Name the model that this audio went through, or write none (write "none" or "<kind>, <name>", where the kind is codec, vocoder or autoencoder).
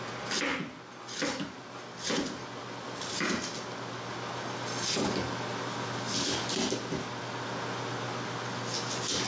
none